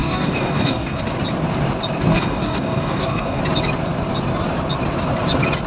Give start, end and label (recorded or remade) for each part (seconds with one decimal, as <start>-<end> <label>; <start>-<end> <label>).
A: 0.0-1.0 remade; 1.0-2.1 recorded; 2.1-3.4 remade; 3.4-5.7 recorded